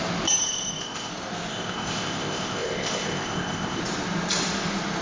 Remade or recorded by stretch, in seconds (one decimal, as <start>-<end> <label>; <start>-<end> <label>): 0.0-0.4 recorded; 0.4-1.1 remade; 1.1-1.5 recorded; 1.5-3.8 remade; 3.8-5.0 recorded